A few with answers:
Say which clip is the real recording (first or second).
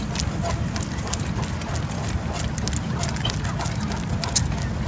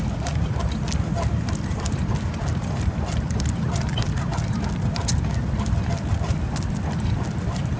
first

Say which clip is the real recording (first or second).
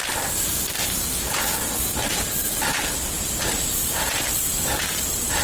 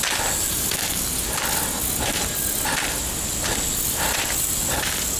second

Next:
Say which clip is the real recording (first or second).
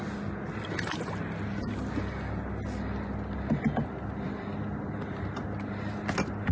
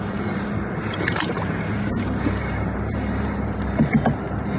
first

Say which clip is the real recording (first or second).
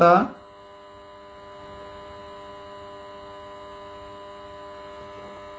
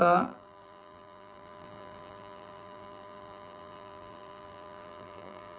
first